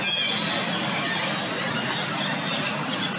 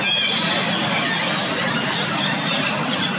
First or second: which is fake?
second